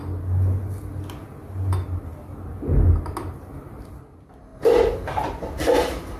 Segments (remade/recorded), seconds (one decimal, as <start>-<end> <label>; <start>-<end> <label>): 0.0-6.2 recorded